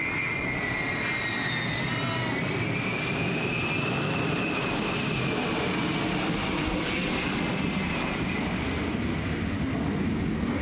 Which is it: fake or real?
real